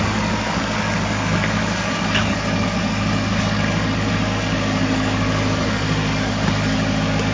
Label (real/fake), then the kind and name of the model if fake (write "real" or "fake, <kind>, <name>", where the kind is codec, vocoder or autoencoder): fake, codec, DAC